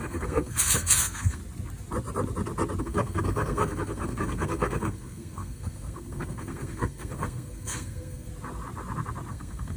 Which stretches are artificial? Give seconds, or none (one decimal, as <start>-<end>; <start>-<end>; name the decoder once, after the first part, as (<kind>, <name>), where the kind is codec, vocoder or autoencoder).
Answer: 0.0-1.4 (codec, SNAC); 2.8-8.3; 9.3-9.8